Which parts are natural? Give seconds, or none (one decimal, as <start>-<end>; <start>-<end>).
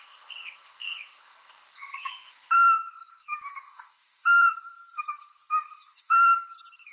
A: none